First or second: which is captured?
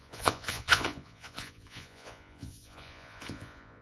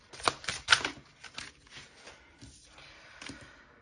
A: second